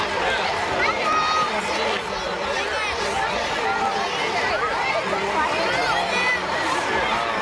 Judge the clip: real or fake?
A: real